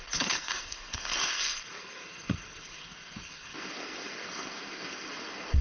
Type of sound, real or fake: fake